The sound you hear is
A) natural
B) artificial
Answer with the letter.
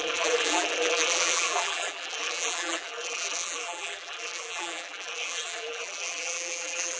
B